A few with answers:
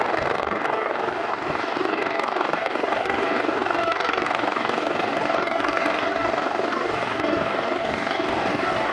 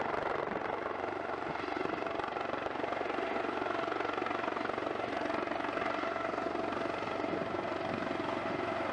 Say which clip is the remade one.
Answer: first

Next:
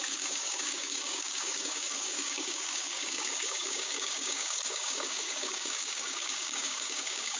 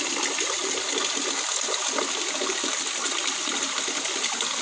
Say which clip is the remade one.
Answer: first